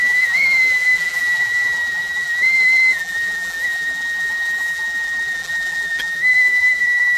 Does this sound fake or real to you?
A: fake